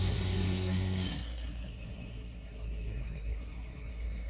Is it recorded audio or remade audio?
remade